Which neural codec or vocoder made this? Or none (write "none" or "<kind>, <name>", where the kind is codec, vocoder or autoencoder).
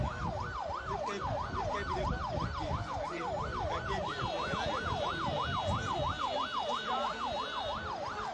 none